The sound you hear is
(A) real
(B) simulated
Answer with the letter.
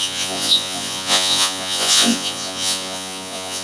B